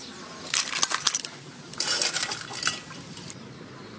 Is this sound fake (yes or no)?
no